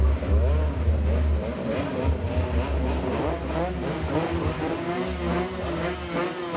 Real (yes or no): yes